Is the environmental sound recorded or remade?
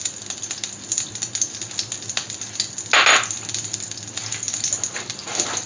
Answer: recorded